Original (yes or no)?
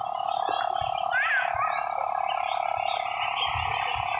yes